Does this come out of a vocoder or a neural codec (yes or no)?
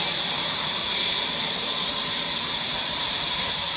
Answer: yes